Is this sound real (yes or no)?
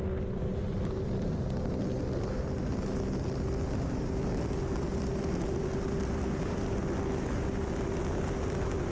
yes